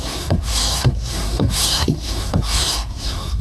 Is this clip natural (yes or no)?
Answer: no